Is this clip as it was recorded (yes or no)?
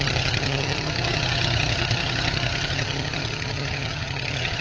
no